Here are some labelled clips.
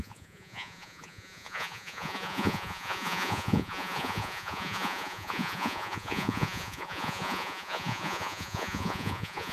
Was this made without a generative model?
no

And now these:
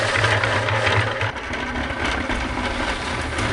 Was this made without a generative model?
yes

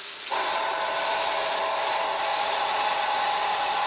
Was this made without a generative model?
yes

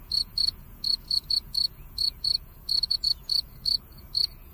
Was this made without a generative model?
no